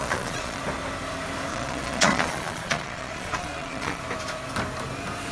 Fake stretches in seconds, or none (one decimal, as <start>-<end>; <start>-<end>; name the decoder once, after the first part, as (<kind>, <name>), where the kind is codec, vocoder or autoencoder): 0.0-0.6 (vocoder, Vocos); 1.5-4.0